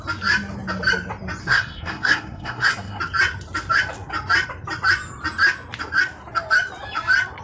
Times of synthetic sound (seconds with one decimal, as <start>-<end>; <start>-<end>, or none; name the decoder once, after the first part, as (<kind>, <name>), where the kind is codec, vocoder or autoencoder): 1.4-3.0 (codec, SNAC)